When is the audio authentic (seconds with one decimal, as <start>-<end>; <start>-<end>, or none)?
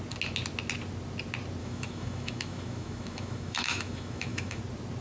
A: 0.0-1.6; 4.6-5.0